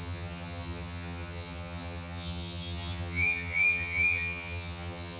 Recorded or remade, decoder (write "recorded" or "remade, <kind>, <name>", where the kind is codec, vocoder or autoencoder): remade, vocoder, HiFi-GAN